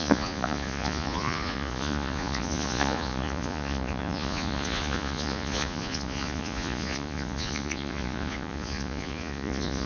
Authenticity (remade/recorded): remade